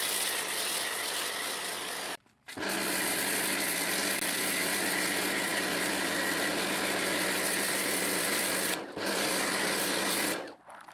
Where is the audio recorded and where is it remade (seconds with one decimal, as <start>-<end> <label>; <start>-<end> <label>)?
0.0-10.9 recorded